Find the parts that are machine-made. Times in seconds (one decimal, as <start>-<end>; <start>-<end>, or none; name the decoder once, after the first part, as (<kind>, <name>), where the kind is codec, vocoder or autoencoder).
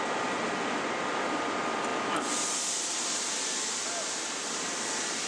none